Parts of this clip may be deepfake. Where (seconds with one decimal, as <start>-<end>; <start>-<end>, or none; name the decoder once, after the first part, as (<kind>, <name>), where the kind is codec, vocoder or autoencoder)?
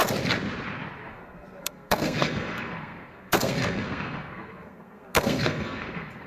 1.1-6.3 (codec, SNAC)